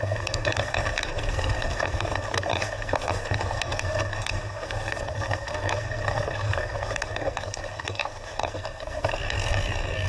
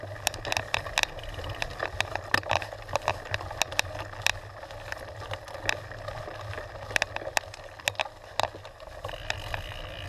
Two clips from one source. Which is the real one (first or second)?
second